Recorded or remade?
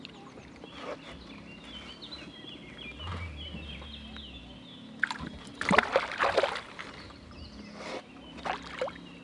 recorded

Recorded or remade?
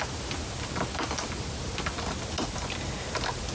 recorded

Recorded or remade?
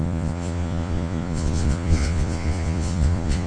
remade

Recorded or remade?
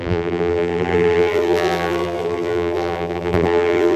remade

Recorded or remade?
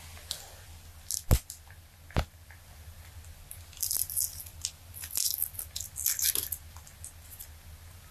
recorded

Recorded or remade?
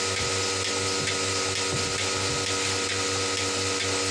recorded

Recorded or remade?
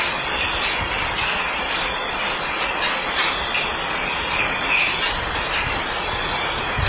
recorded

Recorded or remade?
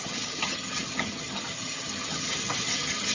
remade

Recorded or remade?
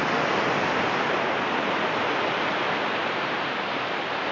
recorded